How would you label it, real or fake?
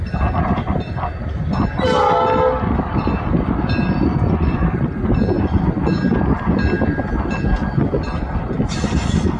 real